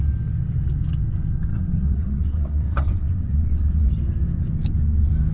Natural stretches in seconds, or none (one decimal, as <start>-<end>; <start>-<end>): 0.0-1.5; 3.9-5.3